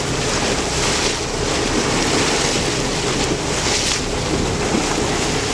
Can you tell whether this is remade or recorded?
recorded